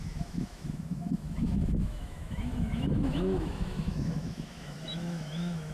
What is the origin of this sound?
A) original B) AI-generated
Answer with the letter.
B